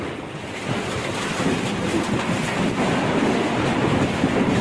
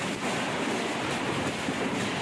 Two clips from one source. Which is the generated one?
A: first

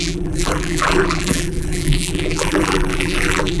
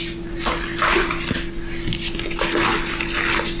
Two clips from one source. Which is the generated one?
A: first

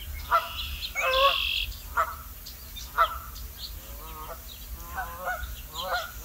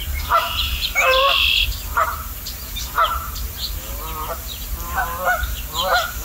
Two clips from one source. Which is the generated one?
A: second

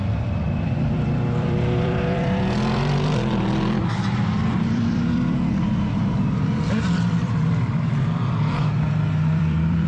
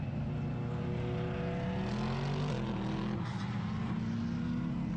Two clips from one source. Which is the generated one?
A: first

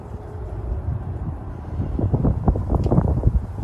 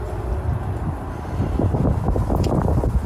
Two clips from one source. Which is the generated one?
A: first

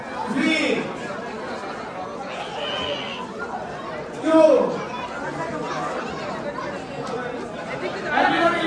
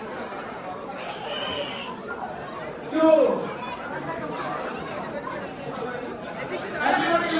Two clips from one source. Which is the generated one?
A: second